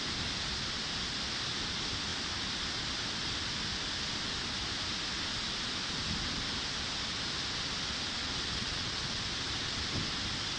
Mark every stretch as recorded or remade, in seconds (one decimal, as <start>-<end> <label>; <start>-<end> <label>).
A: 0.0-8.2 recorded; 8.2-9.2 remade; 9.2-10.6 recorded